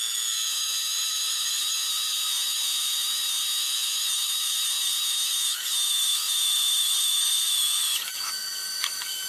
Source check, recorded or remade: remade